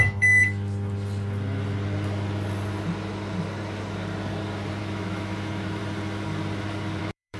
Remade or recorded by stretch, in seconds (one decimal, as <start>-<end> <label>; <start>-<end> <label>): 0.0-0.4 remade; 0.4-4.8 recorded; 4.8-5.8 remade; 5.8-7.0 recorded; 7.0-7.4 remade